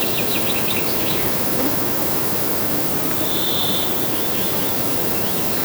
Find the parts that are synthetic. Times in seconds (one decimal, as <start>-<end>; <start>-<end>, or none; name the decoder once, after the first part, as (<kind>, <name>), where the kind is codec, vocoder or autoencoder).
0.0-2.9 (autoencoder, DAC-VAE); 4.1-5.6

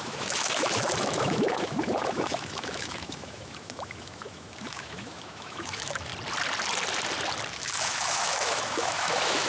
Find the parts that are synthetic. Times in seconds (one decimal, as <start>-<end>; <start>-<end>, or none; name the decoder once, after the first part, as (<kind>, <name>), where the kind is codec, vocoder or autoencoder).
0.0-6.1 (autoencoder, DAC-VAE); 7.5-9.5

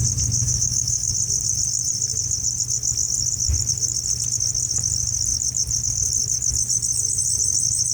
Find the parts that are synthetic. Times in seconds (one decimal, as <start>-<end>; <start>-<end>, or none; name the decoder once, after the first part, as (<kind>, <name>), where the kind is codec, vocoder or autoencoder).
0.4-1.1 (autoencoder, DAC-VAE)

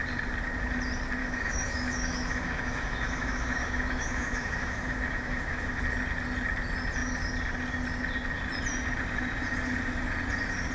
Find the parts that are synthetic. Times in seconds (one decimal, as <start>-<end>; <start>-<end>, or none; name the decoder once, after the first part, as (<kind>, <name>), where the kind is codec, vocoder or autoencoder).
1.2-5.8 (autoencoder, DAC-VAE)